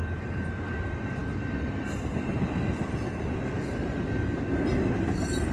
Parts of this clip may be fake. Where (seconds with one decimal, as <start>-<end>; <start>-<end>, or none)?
none